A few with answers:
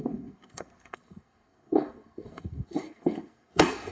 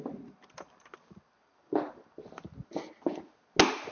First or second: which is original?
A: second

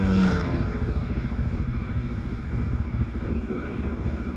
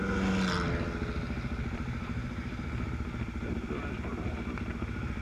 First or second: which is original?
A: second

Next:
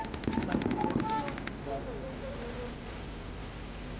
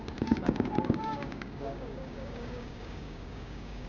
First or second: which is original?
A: first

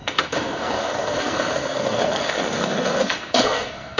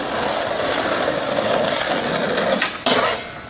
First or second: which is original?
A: second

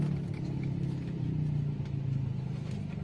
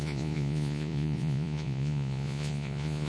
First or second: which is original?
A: first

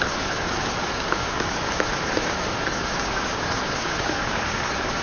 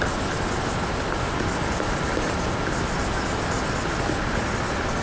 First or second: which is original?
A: second